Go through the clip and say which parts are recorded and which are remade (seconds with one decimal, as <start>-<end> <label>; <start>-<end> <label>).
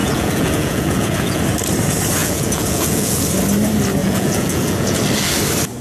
0.0-1.4 remade; 1.4-2.2 recorded; 2.2-3.2 remade; 3.2-4.0 recorded; 4.0-5.0 remade; 5.0-5.8 recorded